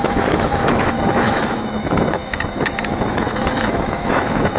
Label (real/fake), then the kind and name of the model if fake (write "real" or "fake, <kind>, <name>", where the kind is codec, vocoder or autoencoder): fake, autoencoder, DAC-VAE